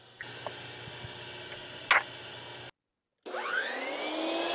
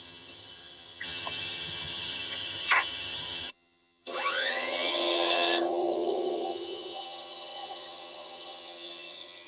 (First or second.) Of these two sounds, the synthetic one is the second